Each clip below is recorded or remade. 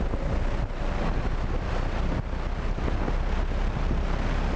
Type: recorded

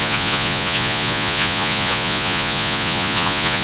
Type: remade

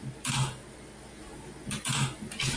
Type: recorded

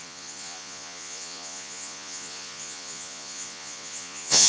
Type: remade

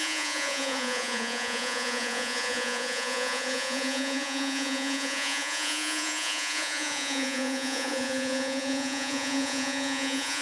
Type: remade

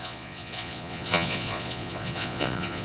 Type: remade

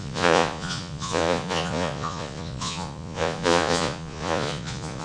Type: remade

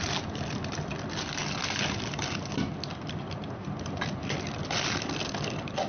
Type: recorded